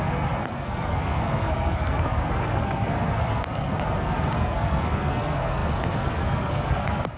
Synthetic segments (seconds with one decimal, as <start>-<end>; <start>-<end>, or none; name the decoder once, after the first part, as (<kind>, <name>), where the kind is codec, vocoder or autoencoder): 0.0-7.2 (codec, SNAC)